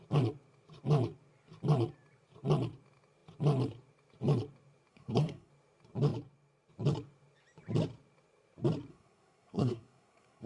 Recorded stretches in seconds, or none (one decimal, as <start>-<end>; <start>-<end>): 0.0-4.9; 5.5-8.9